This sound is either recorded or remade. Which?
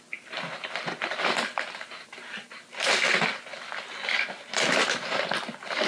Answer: recorded